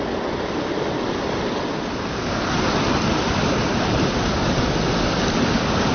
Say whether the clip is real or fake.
real